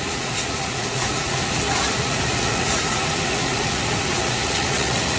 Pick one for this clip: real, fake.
fake